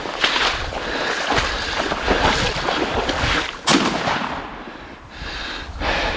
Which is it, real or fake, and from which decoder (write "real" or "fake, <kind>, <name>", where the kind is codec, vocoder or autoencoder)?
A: real